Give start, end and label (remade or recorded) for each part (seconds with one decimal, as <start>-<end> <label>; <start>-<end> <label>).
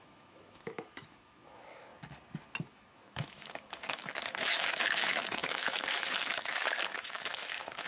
0.0-1.9 remade; 1.9-2.6 recorded; 2.6-7.9 remade